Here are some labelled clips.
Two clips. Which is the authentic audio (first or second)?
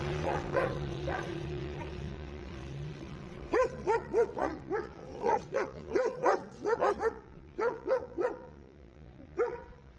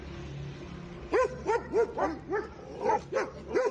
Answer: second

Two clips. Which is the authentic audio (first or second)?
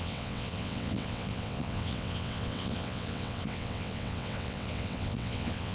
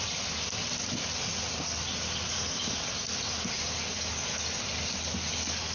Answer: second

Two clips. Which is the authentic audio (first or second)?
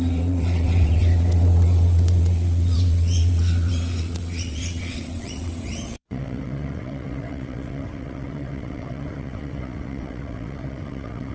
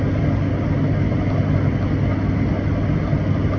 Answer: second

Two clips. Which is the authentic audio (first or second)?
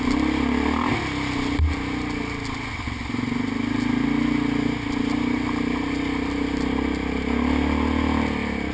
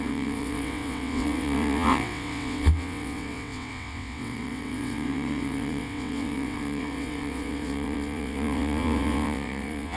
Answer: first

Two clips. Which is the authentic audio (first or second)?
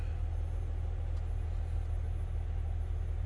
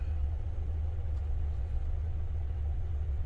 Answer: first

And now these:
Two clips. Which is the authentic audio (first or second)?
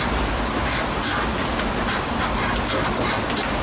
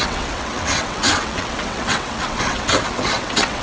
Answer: first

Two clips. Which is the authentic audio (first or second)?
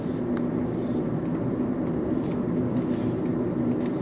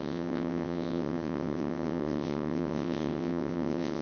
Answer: first